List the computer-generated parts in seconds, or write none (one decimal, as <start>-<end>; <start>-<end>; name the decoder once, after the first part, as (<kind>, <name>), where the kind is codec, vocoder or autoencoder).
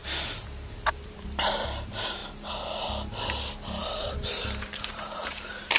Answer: 0.9-2.2 (vocoder, BigVGAN v2); 3.8-5.8